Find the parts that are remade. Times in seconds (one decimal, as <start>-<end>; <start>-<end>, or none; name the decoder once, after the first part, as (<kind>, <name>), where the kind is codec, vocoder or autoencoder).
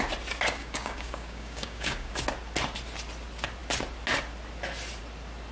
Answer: 0.6-2.1 (codec, DAC)